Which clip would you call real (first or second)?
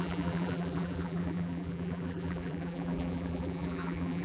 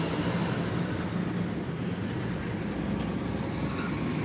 second